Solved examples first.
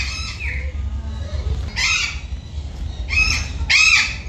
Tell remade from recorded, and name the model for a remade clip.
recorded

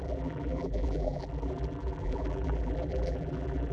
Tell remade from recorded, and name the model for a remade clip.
remade, vocoder, BigVGAN v2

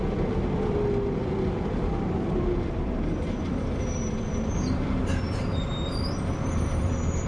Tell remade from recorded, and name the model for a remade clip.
remade, vocoder, BigVGAN v2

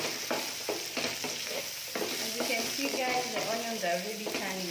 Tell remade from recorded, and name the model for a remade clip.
remade, vocoder, BigVGAN v2